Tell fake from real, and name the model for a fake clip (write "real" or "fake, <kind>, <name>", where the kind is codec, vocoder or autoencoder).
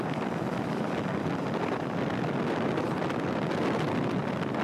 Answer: real